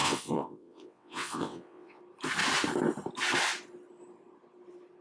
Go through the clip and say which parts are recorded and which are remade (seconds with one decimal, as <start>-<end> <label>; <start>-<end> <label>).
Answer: 0.0-2.0 remade; 2.0-5.0 recorded